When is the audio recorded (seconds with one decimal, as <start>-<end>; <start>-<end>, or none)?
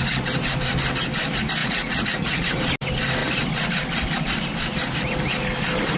0.0-1.6; 2.6-6.0